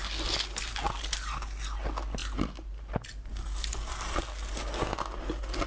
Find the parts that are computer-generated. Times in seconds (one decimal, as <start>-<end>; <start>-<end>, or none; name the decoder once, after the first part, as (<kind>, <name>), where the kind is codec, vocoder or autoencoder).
none